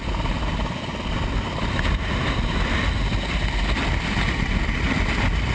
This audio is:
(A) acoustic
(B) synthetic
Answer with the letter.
A